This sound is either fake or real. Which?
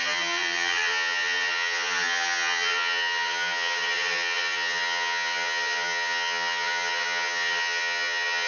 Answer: fake